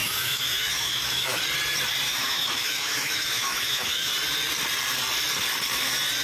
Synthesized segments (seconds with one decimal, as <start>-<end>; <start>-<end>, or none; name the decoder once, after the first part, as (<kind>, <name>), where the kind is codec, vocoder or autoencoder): 0.0-1.4 (autoencoder, DAC-VAE); 2.1-4.1